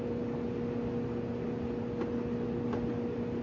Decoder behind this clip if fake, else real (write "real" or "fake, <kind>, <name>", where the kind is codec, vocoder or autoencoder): real